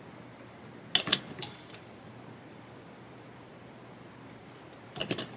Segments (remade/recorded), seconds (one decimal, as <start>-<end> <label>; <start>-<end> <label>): 0.0-1.1 recorded; 1.1-3.6 remade; 3.6-4.4 recorded; 4.4-5.4 remade